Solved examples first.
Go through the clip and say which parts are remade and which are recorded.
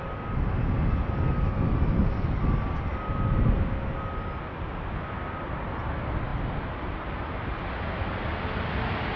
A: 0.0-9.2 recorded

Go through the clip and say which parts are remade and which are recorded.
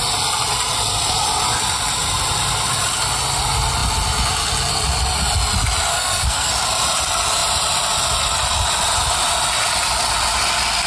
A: 0.0-5.9 recorded; 5.9-6.5 remade; 6.5-10.9 recorded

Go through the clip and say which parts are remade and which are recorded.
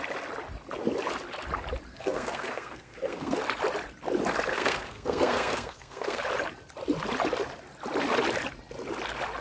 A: 0.0-1.9 recorded; 1.9-3.4 remade; 3.4-4.5 recorded; 4.5-6.2 remade; 6.2-9.4 recorded